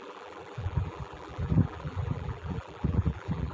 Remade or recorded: remade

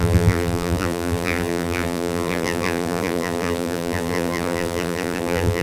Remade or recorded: remade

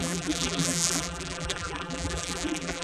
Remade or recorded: remade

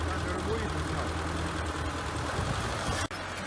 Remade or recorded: recorded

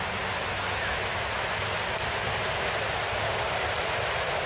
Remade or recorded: recorded